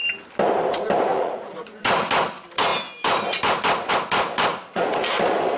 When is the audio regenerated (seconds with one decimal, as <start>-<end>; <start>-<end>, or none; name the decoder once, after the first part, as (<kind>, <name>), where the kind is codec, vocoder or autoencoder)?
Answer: 1.1-1.8 (vocoder, Vocos); 4.5-5.0